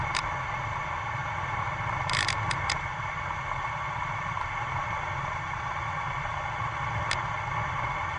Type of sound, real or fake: real